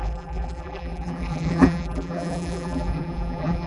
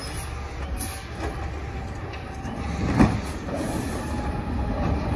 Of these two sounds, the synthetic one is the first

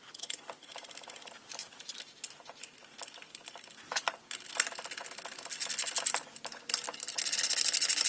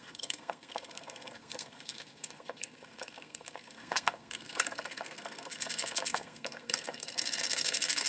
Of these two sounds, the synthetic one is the second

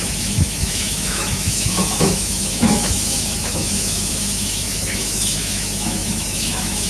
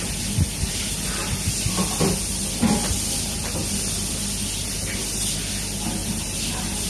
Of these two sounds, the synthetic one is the first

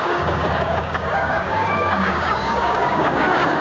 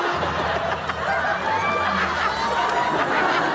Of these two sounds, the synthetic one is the first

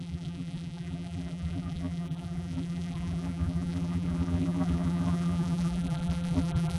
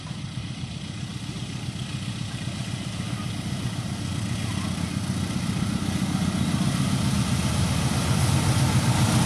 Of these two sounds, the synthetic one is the first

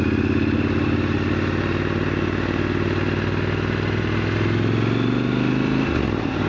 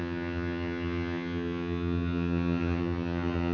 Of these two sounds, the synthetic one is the second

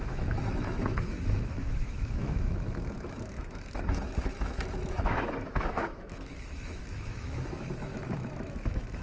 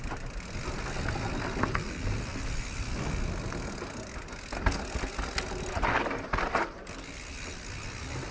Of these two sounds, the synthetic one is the first